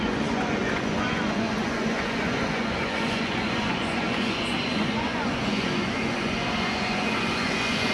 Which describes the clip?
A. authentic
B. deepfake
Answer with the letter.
B